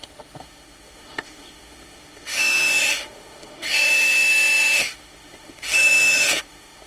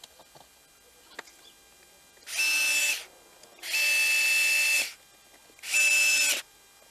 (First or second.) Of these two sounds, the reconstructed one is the first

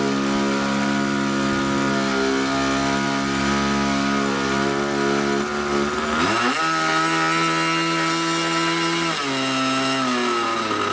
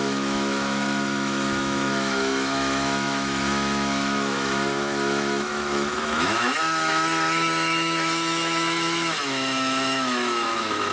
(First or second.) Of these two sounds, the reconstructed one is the second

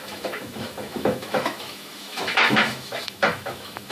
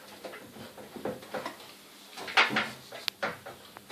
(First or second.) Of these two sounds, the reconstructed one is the first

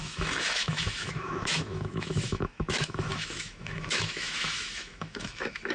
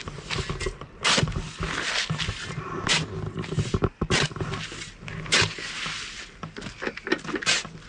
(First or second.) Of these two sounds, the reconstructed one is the first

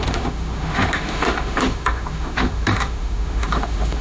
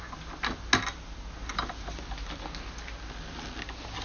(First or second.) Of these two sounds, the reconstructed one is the first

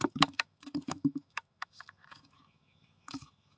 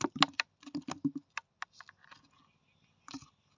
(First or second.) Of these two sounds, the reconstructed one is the first